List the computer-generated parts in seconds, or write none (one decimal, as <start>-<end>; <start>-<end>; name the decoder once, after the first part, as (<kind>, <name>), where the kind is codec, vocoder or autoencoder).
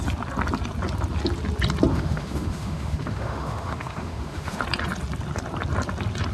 1.9-4.6 (autoencoder, DAC-VAE)